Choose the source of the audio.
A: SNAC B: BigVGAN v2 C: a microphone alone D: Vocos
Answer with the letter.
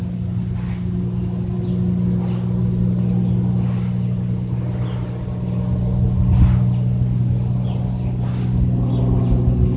C